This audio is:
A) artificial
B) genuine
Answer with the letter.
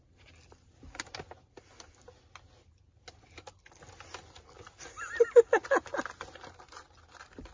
B